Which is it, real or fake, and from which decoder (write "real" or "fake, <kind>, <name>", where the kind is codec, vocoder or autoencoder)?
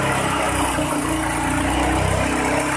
real